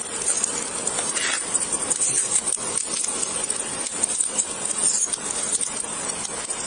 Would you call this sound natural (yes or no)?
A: yes